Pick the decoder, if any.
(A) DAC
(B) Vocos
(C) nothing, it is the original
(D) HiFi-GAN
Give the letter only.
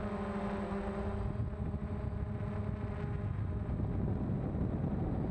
C